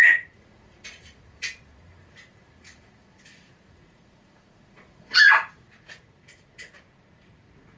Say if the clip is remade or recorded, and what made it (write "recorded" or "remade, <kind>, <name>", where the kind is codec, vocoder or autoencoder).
remade, vocoder, Vocos